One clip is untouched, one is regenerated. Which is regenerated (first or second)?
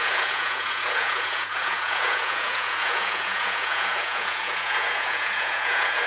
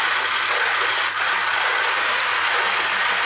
first